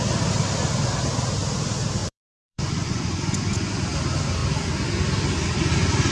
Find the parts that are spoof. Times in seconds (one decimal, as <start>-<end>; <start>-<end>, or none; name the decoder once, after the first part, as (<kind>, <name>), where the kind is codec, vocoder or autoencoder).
2.0-3.8 (vocoder, Vocos)